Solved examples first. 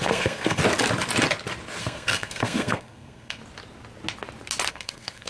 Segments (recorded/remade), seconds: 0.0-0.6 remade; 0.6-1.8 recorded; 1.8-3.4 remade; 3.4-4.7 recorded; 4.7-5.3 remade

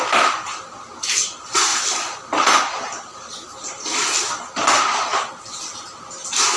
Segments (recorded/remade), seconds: 0.0-6.6 recorded